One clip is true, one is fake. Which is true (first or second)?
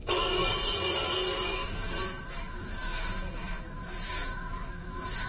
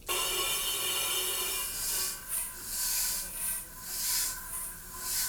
second